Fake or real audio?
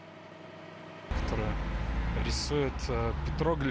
real